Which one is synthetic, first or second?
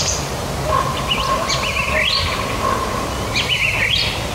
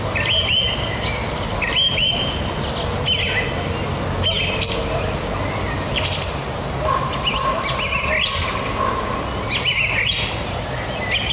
first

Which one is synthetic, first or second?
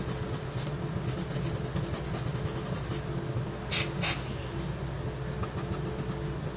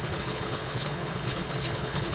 second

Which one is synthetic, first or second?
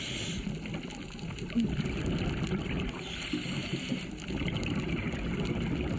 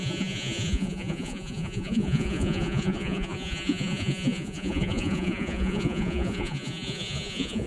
second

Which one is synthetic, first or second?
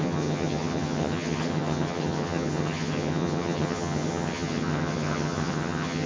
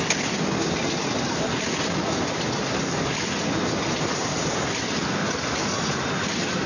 first